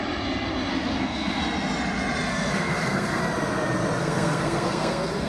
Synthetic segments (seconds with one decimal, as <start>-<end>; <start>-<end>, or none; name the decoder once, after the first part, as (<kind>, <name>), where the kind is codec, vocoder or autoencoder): 0.7-1.4 (codec, SNAC); 2.3-3.2; 4.0-5.3